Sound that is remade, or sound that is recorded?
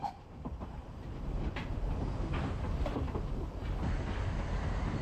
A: recorded